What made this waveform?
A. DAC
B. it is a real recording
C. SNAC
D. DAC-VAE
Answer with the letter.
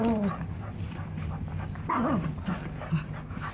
B